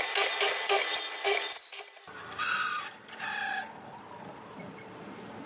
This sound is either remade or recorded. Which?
recorded